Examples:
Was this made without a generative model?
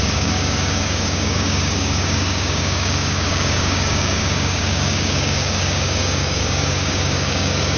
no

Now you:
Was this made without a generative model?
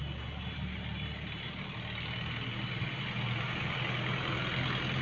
yes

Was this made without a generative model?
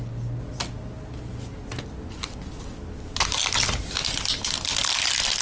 yes